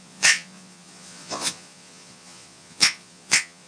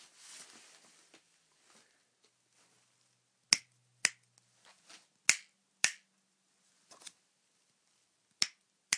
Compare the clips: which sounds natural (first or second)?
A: second